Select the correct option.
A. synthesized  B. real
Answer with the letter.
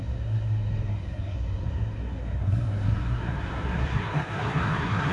A